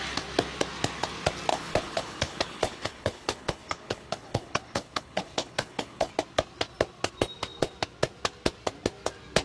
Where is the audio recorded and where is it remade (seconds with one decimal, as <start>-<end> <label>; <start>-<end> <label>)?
0.0-1.5 recorded; 1.5-6.1 remade; 6.1-9.4 recorded